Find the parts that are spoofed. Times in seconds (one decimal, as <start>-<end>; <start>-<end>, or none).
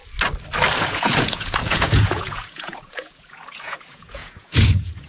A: 0.8-5.1